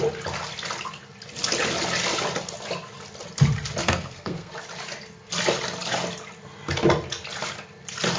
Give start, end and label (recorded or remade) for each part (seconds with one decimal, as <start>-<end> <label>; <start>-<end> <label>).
0.0-3.8 recorded; 3.8-4.5 remade; 4.5-8.2 recorded